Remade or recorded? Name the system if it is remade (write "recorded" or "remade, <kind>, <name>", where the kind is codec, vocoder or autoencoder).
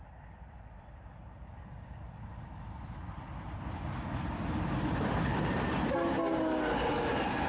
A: recorded